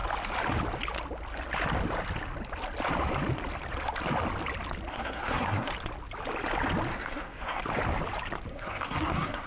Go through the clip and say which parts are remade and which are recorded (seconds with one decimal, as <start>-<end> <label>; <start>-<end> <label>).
0.0-4.9 recorded; 4.9-5.7 remade; 5.7-6.9 recorded; 6.9-7.6 remade; 7.6-8.5 recorded; 8.5-9.5 remade